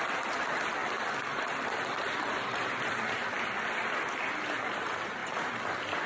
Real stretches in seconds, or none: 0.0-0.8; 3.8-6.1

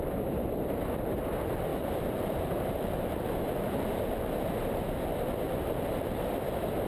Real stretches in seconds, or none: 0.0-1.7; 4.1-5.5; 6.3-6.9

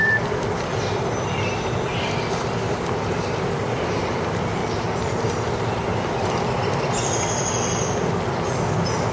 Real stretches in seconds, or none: 1.9-2.4; 4.6-8.5

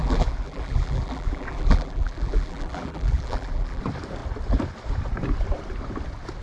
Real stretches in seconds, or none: 3.8-6.4

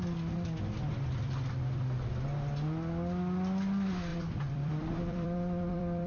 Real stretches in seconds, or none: 0.0-4.1

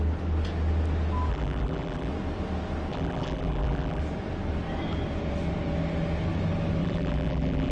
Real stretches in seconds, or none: 0.0-1.3; 2.1-2.9; 4.0-6.8

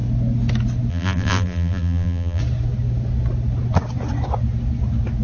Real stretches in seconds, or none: 0.0-0.9; 2.4-5.2